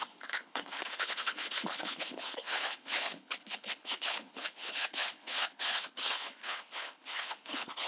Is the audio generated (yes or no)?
yes